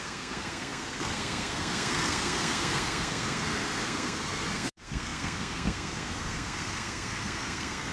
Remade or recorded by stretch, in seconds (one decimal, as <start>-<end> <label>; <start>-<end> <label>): 0.0-7.9 remade